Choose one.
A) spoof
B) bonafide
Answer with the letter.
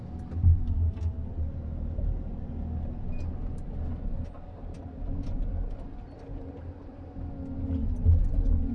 B